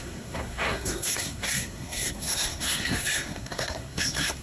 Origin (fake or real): fake